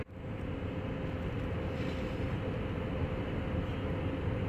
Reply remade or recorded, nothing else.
recorded